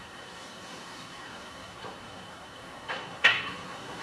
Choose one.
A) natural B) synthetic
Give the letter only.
B